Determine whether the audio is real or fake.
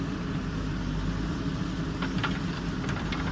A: fake